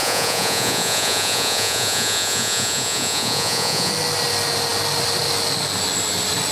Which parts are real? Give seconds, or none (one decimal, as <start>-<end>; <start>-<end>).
3.9-6.5